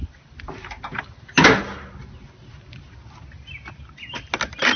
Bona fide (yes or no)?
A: yes